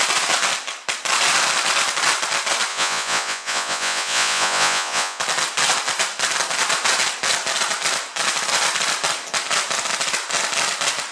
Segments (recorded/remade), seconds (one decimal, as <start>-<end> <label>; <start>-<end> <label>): 0.0-2.7 recorded; 2.7-5.2 remade; 5.2-11.1 recorded